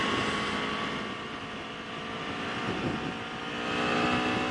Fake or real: real